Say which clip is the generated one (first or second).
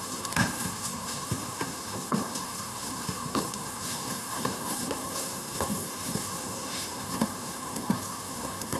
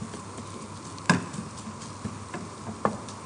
first